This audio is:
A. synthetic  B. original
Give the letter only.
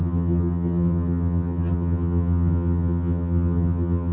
A